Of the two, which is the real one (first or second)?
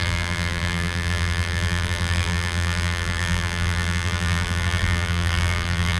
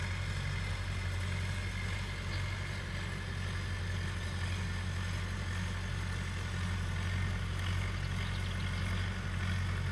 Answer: second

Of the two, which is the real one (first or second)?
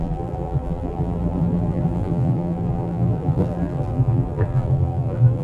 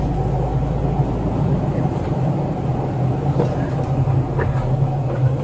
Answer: second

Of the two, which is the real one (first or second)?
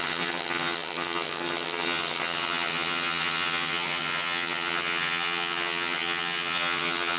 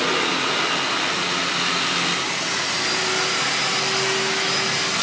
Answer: second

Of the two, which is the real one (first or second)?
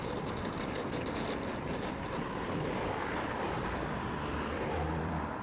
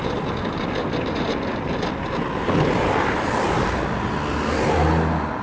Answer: second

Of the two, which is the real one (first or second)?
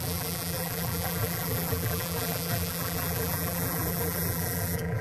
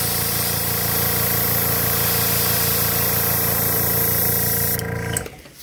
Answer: second